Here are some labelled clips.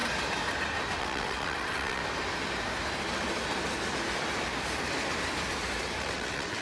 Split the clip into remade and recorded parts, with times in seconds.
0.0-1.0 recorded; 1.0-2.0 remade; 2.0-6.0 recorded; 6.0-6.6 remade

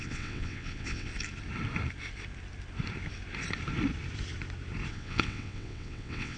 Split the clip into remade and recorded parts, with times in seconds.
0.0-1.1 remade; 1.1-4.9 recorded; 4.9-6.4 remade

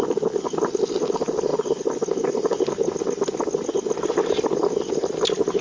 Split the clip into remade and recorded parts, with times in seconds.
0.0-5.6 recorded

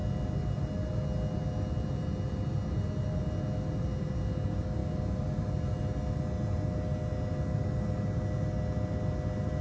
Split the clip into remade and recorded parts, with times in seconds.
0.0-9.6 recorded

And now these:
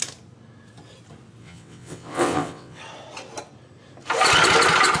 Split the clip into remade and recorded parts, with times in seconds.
0.0-1.4 recorded; 1.4-2.8 remade; 2.8-5.0 recorded

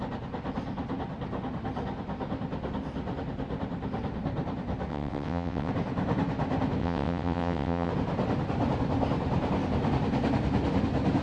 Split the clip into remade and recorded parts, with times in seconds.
0.0-4.9 recorded; 4.9-5.7 remade; 5.7-6.8 recorded; 6.8-7.9 remade; 7.9-11.2 recorded

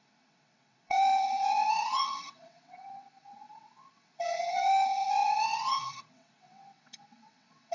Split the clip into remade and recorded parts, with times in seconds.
0.0-7.7 remade